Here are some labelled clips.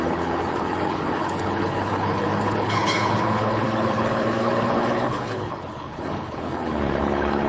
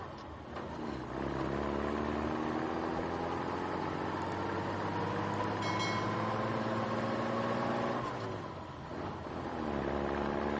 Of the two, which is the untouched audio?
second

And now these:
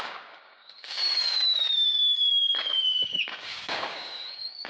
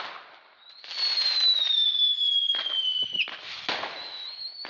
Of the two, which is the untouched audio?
second